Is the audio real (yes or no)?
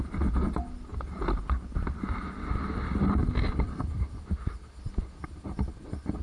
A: yes